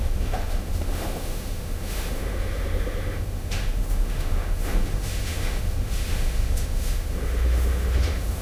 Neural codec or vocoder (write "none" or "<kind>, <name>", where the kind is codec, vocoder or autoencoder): autoencoder, DAC-VAE